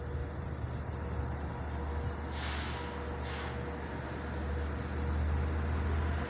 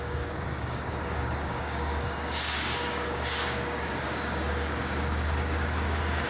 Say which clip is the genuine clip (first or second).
first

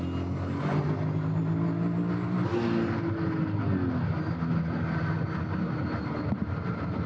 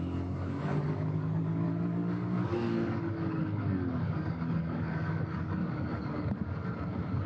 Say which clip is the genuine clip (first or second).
first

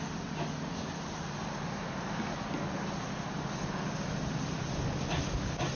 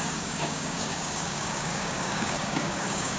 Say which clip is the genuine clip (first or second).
first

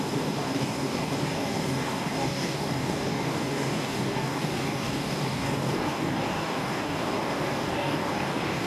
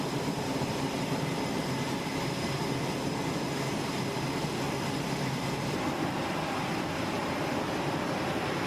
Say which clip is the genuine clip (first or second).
second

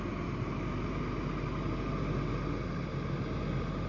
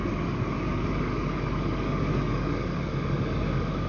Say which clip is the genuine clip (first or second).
first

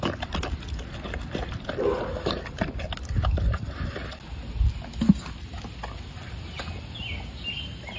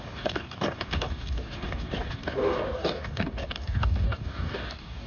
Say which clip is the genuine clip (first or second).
first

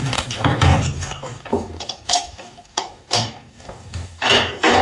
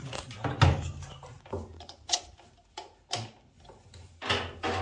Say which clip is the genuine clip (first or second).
second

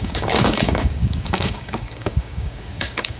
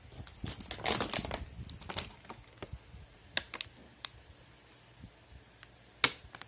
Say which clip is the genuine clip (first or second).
second